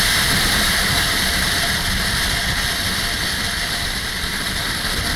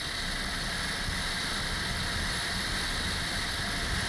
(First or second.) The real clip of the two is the second